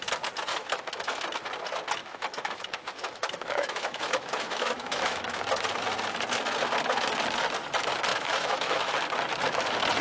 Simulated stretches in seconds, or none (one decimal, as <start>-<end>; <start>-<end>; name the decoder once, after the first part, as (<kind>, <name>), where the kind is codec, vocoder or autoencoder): 0.5-1.2 (autoencoder, DAC-VAE); 2.0-5.5; 8.1-8.9

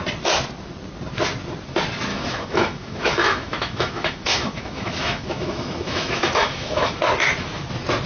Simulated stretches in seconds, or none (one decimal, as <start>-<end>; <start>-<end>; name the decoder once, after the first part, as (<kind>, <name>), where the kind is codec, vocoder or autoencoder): 2.1-7.0 (autoencoder, DAC-VAE)